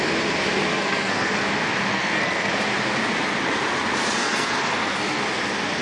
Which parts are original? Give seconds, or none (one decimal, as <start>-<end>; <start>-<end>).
0.0-0.7; 1.3-1.9; 2.5-4.2; 5.2-5.8